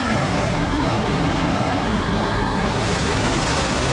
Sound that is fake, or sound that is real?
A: fake